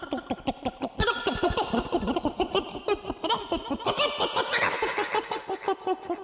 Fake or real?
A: real